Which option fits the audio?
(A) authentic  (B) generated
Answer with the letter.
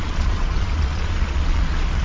B